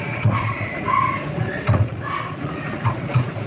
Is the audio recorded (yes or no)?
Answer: no